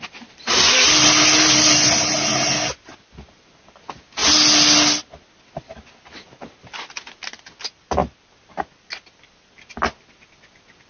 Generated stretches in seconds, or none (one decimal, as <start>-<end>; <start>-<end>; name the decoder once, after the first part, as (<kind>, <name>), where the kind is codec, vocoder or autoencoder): none